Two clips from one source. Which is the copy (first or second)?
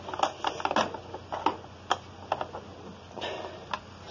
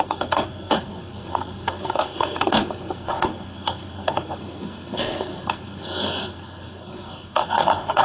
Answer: second